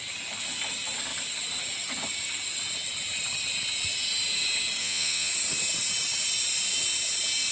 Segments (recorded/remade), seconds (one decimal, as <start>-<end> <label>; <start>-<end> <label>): 0.0-4.8 recorded; 4.8-5.3 remade; 5.3-7.5 recorded